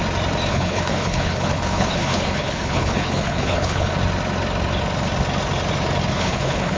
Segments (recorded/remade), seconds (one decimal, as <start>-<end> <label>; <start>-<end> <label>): 0.0-0.5 recorded; 0.5-3.9 remade; 3.9-6.1 recorded; 6.1-6.8 remade